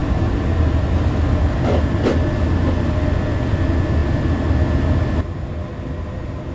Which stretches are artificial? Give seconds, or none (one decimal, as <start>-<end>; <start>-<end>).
4.0-4.5